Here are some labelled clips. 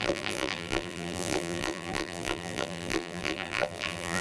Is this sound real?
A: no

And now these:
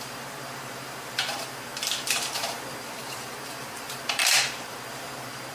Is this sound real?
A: no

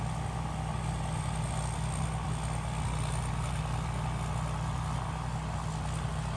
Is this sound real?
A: yes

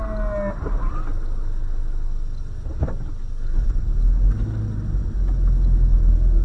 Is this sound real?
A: yes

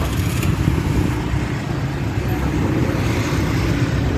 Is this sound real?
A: yes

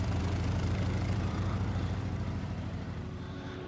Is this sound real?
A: no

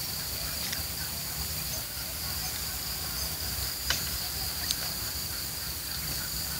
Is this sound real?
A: no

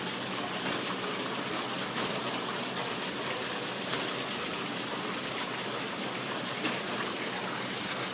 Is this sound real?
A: yes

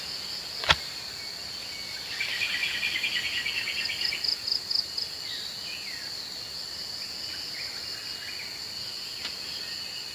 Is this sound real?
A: yes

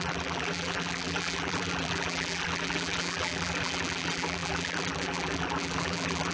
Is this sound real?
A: no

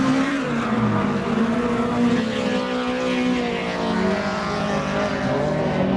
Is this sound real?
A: yes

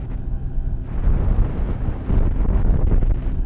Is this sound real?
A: yes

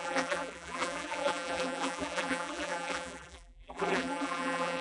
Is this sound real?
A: no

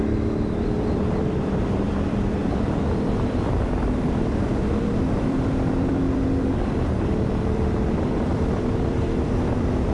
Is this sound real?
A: no